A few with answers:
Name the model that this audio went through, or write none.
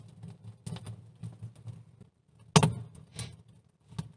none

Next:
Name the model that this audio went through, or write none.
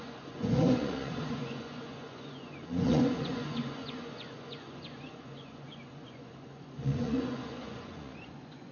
vocoder, Vocos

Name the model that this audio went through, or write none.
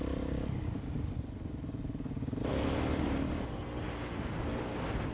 none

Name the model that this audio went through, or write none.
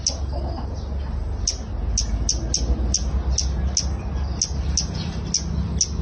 none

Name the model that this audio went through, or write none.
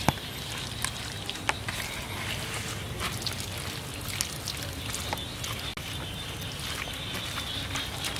none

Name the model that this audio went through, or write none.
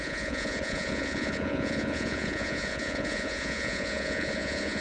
vocoder, Vocos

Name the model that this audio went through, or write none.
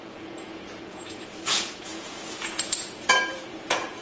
vocoder, Vocos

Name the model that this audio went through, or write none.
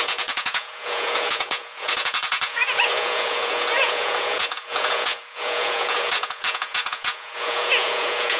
vocoder, Vocos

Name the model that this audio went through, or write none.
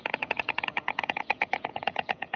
vocoder, Vocos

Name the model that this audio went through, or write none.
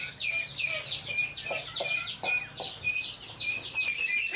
none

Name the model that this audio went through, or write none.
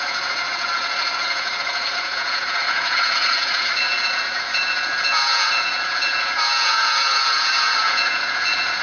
vocoder, Vocos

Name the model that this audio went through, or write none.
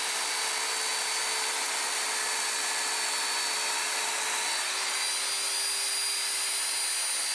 none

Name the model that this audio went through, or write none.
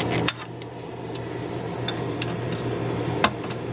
none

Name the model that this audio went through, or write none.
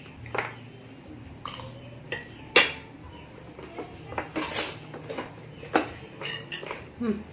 none